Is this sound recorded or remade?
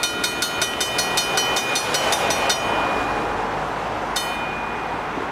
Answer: recorded